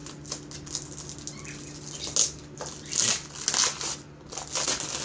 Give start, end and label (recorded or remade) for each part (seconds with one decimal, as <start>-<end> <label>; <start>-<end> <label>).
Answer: 0.0-5.0 recorded